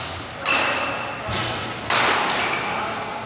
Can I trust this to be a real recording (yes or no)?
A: yes